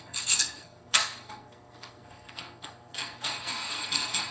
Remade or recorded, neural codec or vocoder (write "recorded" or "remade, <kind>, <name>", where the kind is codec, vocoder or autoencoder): remade, codec, SNAC